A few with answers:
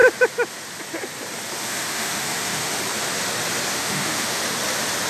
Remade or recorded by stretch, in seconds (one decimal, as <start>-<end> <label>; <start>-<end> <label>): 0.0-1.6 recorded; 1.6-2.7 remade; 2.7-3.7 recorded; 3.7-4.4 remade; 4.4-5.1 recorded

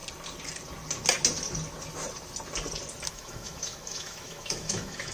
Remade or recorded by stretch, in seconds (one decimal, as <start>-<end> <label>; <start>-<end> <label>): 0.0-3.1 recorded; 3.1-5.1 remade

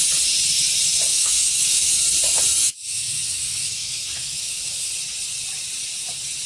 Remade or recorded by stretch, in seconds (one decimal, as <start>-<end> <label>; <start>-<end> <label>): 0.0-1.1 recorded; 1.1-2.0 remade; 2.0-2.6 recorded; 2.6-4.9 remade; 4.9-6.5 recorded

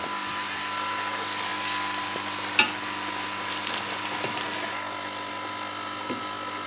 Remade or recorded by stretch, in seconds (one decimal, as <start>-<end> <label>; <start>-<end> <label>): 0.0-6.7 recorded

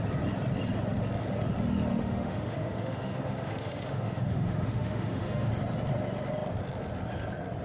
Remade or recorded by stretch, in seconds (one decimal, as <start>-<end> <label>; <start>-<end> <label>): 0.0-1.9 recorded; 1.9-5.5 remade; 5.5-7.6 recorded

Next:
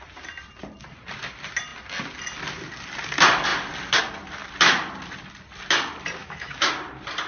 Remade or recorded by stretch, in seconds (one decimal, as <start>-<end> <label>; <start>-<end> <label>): 0.0-6.2 recorded; 6.2-6.7 remade; 6.7-7.3 recorded

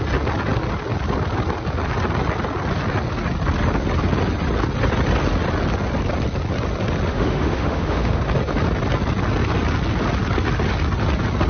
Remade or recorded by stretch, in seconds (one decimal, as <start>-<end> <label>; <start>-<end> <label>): 0.0-7.1 recorded; 7.1-8.2 remade; 8.2-11.5 recorded